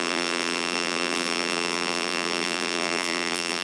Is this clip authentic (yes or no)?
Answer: no